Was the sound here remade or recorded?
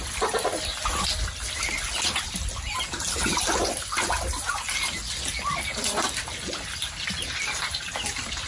recorded